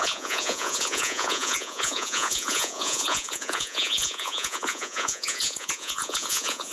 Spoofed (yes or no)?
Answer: yes